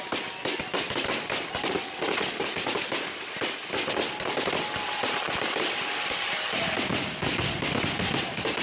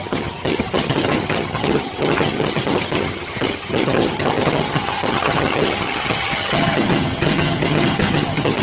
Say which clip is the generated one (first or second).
second